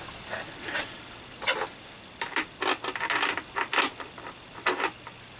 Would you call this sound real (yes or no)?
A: yes